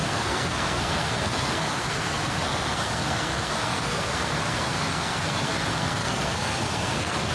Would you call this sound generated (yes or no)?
yes